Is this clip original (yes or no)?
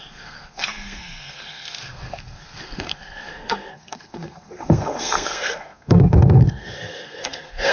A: no